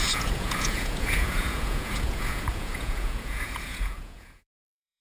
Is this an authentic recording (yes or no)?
no